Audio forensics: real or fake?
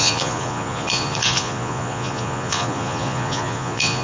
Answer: fake